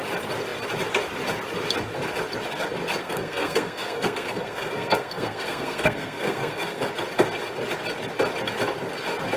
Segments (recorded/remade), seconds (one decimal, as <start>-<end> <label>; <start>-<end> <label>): 0.0-3.0 recorded; 3.0-6.9 remade; 6.9-9.4 recorded